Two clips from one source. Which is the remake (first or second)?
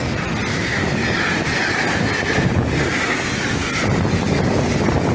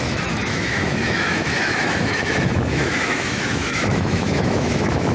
second